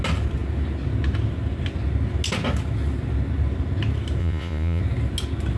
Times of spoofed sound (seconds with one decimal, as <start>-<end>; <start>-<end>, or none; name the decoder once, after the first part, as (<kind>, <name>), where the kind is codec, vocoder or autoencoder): 4.2-4.8 (vocoder, Vocos)